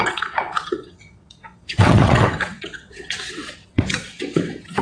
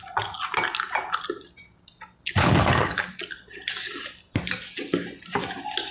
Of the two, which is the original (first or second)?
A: second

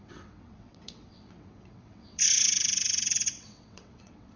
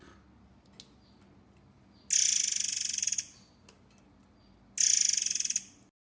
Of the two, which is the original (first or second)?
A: second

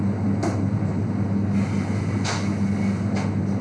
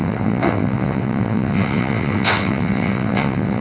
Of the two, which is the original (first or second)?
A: first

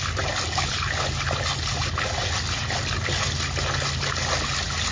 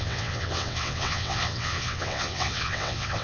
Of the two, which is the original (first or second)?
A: first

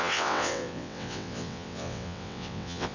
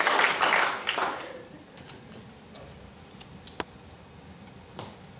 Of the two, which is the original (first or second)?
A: second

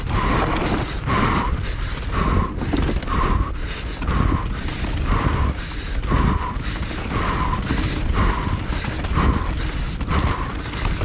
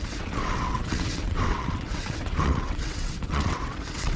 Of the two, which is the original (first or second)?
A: first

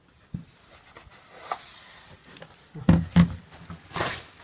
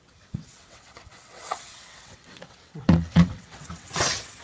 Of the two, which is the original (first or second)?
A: first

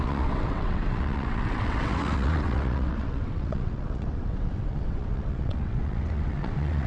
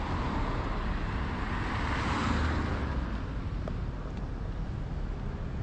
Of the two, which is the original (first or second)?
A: second